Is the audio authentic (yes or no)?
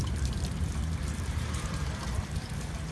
no